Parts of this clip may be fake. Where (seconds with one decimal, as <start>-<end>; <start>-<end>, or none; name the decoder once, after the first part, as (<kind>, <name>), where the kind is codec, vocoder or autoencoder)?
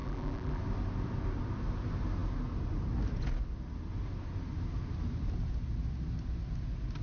0.0-0.6 (vocoder, BigVGAN v2)